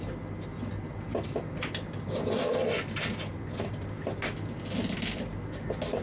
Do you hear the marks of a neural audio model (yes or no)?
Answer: no